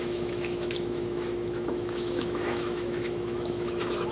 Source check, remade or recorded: remade